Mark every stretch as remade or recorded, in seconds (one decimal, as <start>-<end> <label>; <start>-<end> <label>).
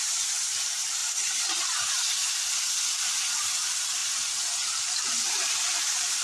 0.0-6.2 recorded